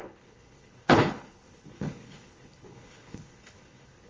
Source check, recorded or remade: remade